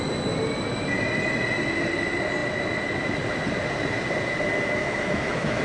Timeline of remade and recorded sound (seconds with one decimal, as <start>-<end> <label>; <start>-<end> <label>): 0.0-4.8 recorded; 4.8-5.6 remade